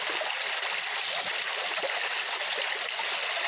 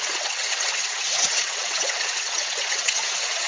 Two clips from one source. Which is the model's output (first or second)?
second